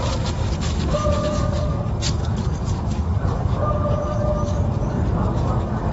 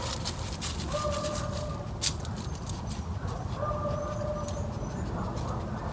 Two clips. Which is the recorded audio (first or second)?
second